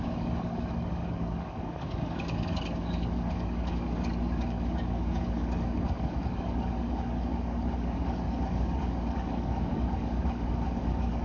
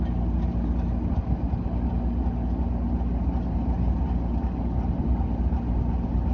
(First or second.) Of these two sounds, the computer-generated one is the first